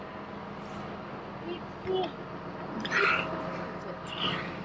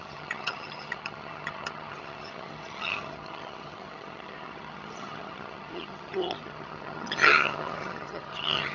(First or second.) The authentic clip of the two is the first